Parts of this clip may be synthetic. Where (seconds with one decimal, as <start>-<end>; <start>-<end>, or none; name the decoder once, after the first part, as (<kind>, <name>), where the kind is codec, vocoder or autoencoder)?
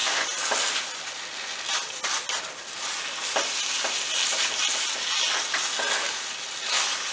none